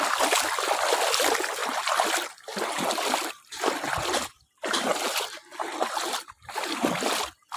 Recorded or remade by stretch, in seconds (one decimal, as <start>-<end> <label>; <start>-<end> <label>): 0.0-7.6 recorded